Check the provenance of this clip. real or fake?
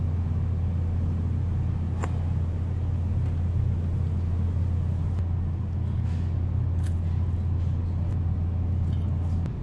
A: real